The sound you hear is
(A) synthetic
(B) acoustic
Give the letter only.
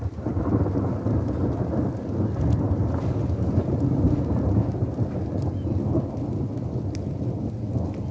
B